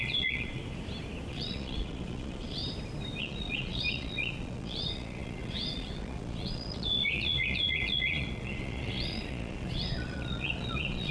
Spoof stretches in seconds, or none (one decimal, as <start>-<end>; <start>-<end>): 0.0-0.6; 1.3-2.6; 3.2-11.1